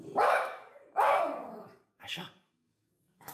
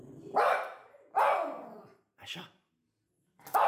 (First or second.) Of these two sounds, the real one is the second